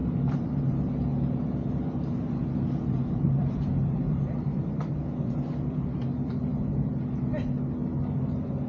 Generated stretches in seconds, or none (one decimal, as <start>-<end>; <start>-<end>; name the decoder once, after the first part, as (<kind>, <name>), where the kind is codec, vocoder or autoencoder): 0.0-6.5 (vocoder, BigVGAN v2)